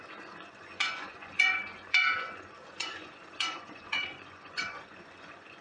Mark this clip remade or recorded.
remade